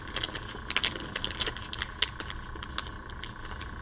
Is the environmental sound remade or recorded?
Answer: recorded